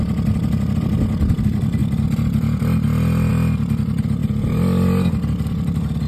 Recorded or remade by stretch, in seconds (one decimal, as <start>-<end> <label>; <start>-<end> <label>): 0.0-4.2 recorded; 4.2-5.1 remade; 5.1-6.1 recorded